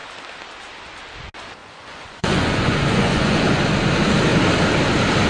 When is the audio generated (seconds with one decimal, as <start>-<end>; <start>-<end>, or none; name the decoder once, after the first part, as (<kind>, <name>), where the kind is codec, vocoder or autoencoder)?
1.6-3.6 (vocoder, Vocos)